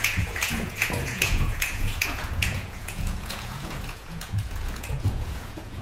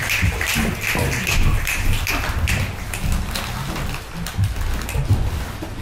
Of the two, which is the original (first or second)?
second